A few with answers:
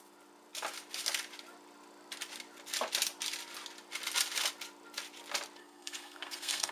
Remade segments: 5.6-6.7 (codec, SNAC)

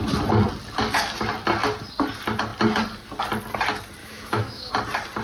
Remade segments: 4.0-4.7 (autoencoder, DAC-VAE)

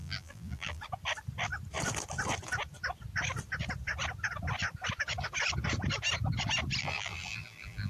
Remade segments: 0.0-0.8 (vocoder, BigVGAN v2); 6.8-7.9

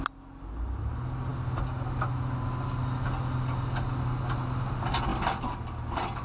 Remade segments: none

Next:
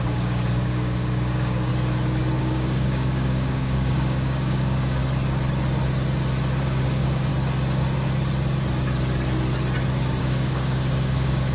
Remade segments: 0.0-1.7 (codec, DAC); 2.4-5.0; 6.6-7.3; 10.2-11.5

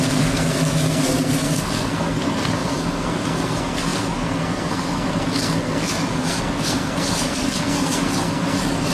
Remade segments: 0.0-8.9 (codec, SNAC)

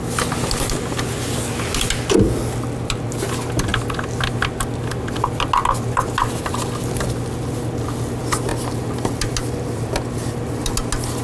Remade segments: none